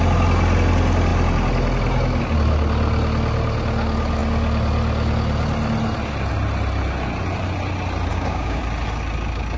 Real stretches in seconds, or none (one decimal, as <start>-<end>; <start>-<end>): 0.0-8.1; 8.6-9.6